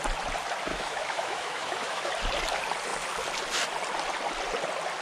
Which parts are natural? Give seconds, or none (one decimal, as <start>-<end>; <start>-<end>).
0.0-0.7; 2.1-5.0